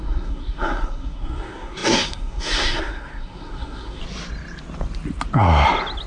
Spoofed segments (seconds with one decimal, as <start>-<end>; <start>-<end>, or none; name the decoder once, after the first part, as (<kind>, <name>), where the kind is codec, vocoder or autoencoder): 0.0-4.0 (codec, SNAC)

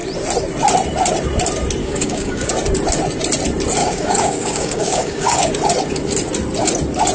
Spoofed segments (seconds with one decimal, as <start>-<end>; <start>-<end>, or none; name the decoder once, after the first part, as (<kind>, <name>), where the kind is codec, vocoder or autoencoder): 1.8-2.5 (codec, DAC); 3.8-5.5

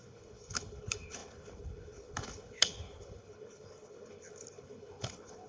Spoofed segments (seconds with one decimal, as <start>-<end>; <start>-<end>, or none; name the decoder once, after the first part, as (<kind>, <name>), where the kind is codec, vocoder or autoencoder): 0.0-5.5 (codec, HILCodec)

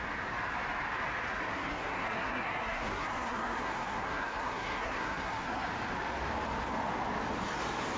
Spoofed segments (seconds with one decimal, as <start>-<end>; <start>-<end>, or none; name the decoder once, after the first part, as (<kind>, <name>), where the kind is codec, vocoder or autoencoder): 1.5-5.7 (codec, SNAC)

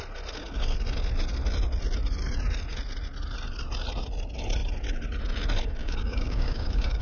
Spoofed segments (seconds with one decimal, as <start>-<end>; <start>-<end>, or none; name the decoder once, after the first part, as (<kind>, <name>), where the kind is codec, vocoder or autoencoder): 5.8-7.0 (codec, DAC)